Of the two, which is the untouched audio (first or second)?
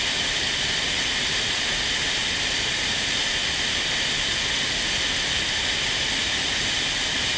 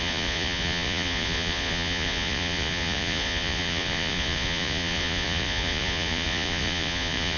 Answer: first